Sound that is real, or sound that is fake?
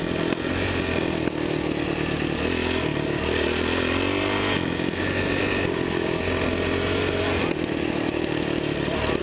real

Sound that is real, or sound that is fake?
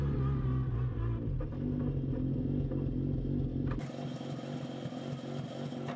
real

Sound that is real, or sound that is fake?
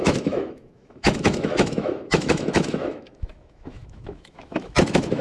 fake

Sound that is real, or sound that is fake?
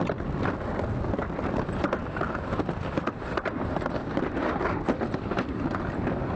real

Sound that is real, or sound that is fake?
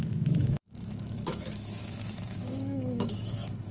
fake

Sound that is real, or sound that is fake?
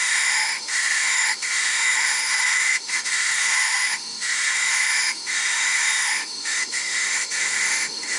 fake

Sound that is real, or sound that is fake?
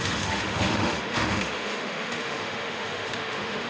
fake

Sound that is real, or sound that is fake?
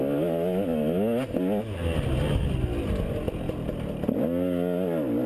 real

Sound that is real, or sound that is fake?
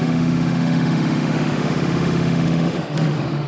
fake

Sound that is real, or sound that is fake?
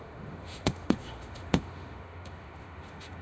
fake